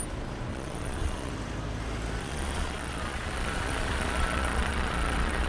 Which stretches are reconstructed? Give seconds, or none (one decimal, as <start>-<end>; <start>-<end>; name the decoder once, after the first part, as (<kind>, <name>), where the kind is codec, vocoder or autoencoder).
0.5-1.3 (vocoder, Vocos); 2.2-5.5